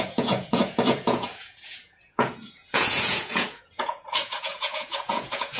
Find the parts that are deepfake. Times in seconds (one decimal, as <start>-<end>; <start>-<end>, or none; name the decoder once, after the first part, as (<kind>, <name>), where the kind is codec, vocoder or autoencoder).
0.0-5.6 (vocoder, Vocos)